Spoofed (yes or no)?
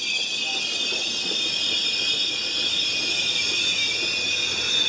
no